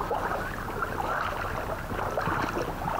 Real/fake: real